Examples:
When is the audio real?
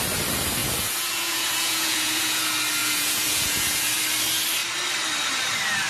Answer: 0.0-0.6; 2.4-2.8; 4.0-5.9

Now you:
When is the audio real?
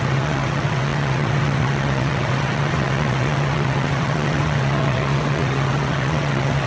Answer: none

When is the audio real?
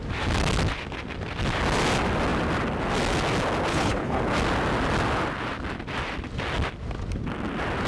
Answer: 0.0-3.7; 4.2-7.9